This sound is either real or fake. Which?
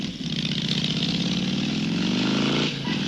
real